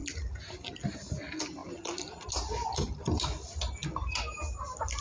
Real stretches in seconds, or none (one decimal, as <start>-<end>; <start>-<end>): 0.0-5.0